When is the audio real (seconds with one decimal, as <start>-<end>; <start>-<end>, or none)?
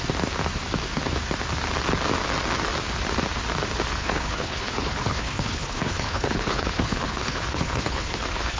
0.0-4.0